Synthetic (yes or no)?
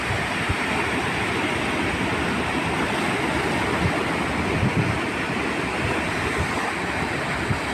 no